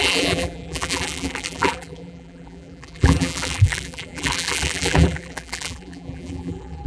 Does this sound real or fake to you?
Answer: fake